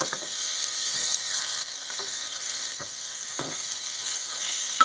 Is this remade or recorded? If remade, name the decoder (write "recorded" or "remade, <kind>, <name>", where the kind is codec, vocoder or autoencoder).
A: remade, codec, SNAC